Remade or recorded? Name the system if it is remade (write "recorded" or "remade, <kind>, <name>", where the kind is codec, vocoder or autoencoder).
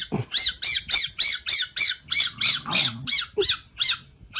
recorded